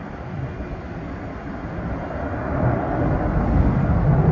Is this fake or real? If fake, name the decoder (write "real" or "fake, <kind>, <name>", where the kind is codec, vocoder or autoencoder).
real